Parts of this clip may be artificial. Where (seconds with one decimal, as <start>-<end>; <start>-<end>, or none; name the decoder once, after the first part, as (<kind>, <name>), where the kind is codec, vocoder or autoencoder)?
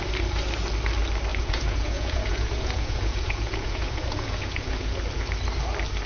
1.3-5.0 (vocoder, Vocos)